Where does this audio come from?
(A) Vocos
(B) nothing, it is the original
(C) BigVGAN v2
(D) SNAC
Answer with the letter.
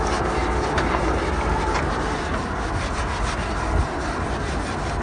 B